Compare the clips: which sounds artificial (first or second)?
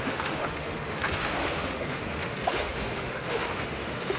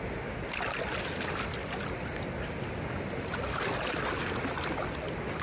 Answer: first